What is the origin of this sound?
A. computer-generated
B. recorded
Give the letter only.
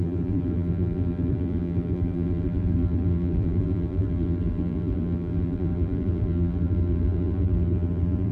A